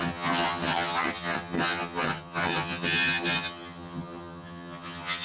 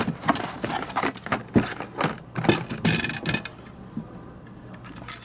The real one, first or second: second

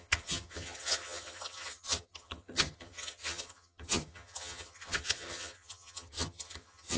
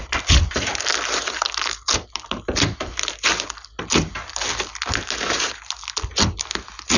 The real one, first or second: second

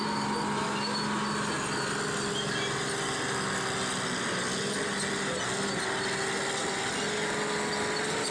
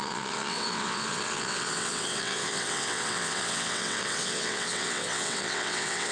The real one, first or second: first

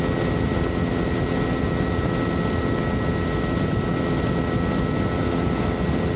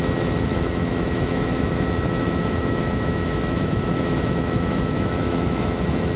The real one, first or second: first